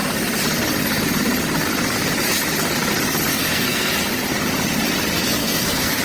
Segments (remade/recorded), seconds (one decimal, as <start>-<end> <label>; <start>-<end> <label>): 0.0-3.3 recorded; 3.3-3.9 remade; 3.9-5.4 recorded; 5.4-6.0 remade